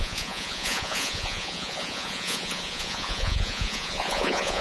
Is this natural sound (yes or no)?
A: no